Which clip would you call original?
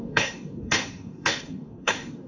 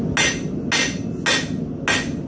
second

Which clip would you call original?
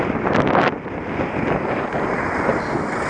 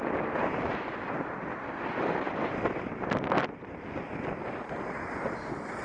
first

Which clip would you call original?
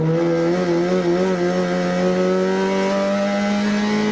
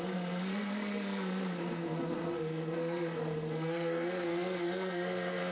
first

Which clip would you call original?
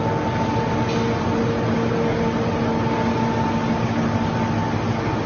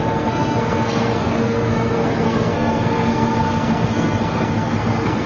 first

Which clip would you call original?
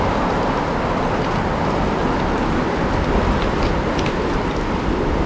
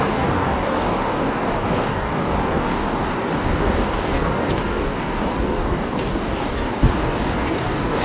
first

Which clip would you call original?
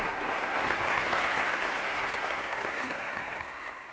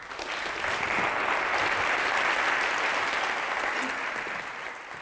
second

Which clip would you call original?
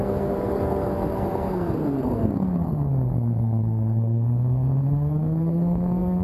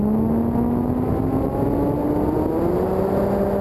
second